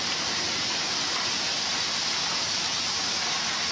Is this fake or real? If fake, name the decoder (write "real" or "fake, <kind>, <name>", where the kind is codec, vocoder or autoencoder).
real